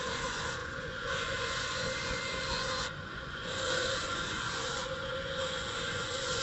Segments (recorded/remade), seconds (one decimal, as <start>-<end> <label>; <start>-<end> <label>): 0.0-6.4 remade